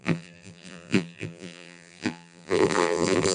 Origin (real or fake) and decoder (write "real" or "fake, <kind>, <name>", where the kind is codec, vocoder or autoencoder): fake, vocoder, BigVGAN v2